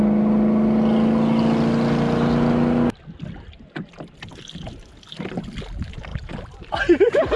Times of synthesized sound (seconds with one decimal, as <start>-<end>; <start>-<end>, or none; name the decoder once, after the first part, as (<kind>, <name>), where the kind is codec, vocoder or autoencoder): 6.1-7.4 (vocoder, BigVGAN v2)